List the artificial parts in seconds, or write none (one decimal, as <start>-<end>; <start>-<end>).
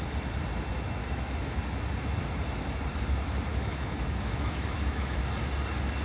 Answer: 1.0-1.6; 3.5-5.2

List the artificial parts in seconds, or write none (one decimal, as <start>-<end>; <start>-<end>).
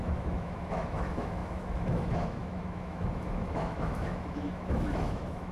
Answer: 0.0-5.5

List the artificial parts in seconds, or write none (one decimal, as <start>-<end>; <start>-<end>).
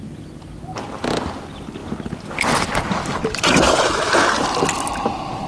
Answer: none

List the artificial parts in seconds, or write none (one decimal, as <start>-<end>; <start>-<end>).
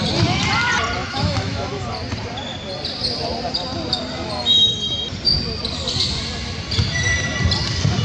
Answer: 1.0-1.7